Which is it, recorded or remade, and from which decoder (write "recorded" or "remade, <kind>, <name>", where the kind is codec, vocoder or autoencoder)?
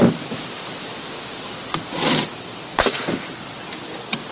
recorded